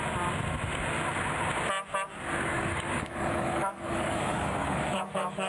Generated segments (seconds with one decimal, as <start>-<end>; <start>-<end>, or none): 2.5-5.5